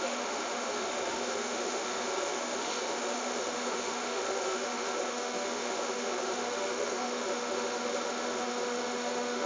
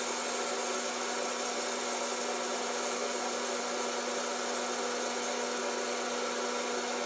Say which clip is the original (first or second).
second